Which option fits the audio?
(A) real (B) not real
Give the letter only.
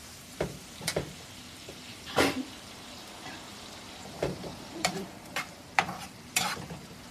B